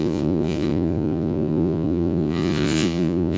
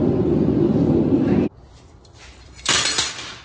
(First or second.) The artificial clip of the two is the first